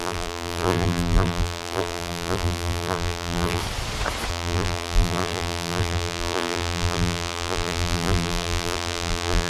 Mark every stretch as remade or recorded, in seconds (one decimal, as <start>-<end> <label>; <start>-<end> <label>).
0.0-3.6 remade; 3.6-4.3 recorded; 4.3-9.5 remade